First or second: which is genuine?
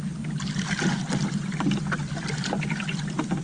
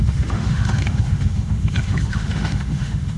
first